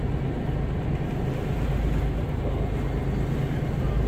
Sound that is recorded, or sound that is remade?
recorded